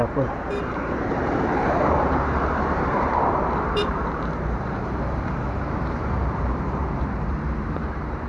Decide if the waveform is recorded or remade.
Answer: remade